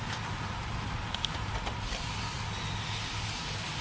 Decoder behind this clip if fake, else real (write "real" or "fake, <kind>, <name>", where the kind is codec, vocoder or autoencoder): real